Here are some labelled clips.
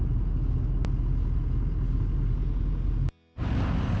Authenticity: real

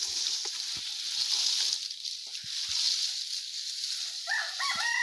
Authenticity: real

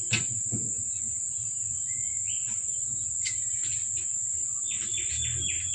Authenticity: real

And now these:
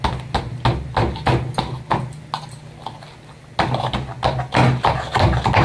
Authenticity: real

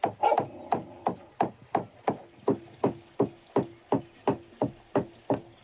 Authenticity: real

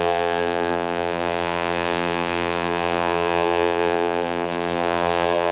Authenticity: fake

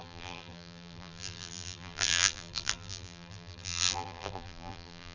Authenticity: fake